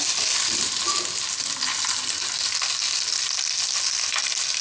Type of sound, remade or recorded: recorded